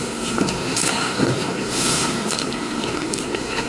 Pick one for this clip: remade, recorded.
remade